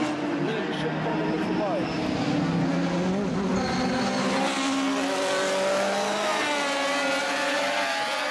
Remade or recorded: recorded